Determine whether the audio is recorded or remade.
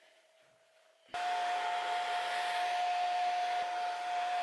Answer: recorded